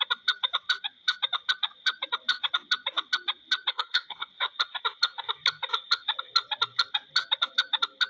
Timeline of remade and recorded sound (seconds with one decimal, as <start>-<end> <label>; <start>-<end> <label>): 0.0-3.7 recorded; 3.7-4.3 remade; 4.3-8.1 recorded